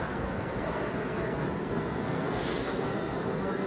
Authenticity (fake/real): fake